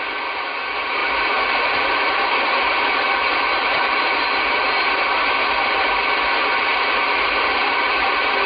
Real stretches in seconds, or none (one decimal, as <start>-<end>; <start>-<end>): 0.0-8.5